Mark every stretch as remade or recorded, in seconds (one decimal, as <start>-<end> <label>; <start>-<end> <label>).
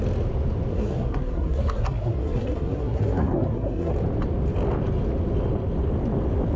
0.0-0.7 recorded; 0.7-3.9 remade; 3.9-6.6 recorded